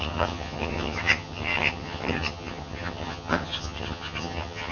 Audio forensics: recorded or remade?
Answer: remade